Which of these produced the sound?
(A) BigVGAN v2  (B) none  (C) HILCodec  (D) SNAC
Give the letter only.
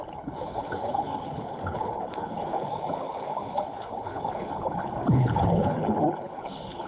C